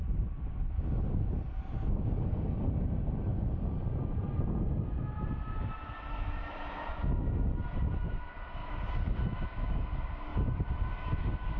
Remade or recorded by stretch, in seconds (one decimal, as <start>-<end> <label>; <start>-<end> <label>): 0.0-3.3 recorded; 3.3-4.2 remade; 4.2-8.6 recorded; 8.6-9.6 remade; 9.6-10.3 recorded; 10.3-10.9 remade; 10.9-11.6 recorded